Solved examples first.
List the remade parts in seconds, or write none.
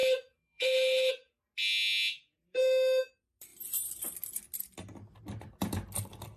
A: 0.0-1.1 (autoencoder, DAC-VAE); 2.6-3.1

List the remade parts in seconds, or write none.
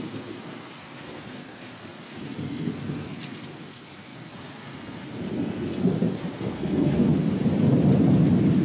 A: 0.0-7.1 (codec, SNAC)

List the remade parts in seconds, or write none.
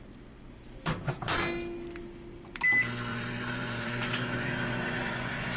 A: 3.1-5.6 (vocoder, Vocos)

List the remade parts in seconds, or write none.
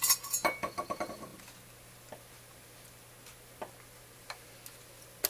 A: none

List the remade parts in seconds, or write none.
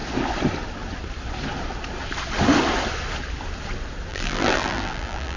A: 4.1-5.4 (vocoder, BigVGAN v2)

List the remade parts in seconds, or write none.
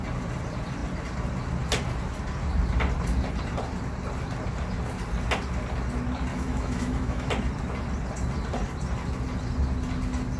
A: 6.3-7.3 (autoencoder, DAC-VAE)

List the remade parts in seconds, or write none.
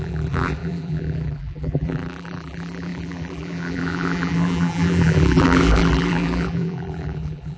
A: 0.0-7.6 (vocoder, BigVGAN v2)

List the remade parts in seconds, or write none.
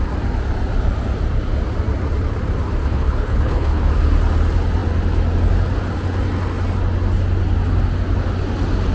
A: 2.8-3.9 (codec, HILCodec)